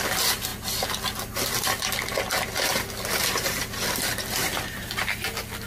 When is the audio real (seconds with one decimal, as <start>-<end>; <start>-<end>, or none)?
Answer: 0.0-4.4; 4.9-5.7